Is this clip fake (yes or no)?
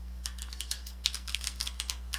yes